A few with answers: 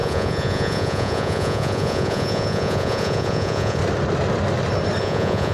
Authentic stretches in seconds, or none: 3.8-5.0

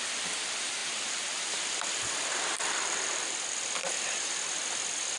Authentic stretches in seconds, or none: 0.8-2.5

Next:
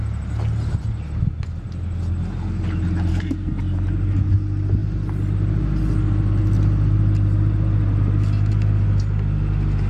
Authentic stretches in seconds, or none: 0.0-3.1; 3.6-9.9